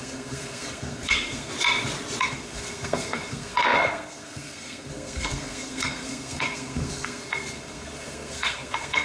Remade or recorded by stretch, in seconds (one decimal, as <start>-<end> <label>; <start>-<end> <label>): 0.0-1.5 remade; 1.5-2.2 recorded; 2.2-9.0 remade